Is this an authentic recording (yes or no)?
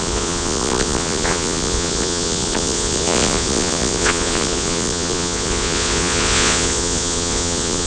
no